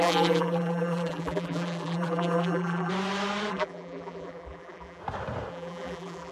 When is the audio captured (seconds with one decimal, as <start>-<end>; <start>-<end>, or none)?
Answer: 2.9-3.5; 5.0-5.5